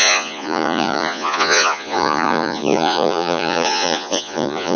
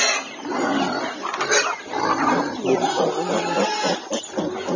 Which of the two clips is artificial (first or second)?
first